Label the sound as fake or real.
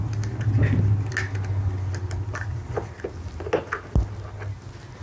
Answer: real